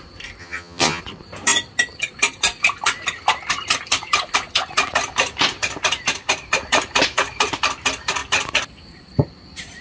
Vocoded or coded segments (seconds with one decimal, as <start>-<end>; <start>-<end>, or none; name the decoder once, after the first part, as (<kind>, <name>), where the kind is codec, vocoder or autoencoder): 0.4-1.0 (vocoder, HiFi-GAN)